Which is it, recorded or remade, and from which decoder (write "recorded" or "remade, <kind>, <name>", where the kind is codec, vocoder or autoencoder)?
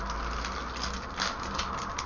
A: recorded